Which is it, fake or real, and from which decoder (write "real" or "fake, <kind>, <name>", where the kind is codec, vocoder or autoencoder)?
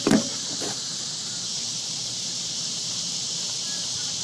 fake, vocoder, BigVGAN v2